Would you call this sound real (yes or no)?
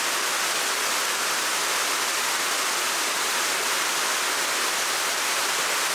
yes